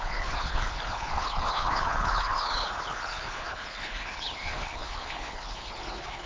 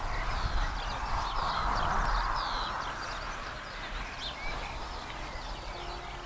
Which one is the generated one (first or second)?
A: first